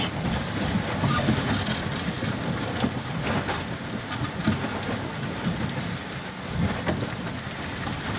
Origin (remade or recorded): recorded